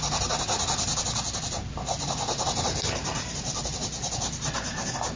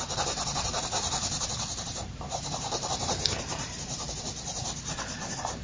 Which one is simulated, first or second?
second